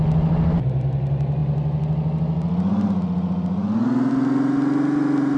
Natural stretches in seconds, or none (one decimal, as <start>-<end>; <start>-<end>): 0.0-5.4